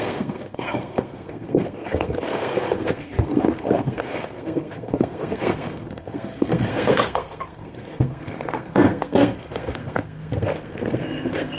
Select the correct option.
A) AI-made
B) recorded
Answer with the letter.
A